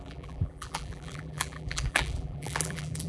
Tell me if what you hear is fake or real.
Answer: fake